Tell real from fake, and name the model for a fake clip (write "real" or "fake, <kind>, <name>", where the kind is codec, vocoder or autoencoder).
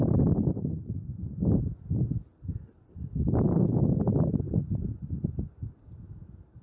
real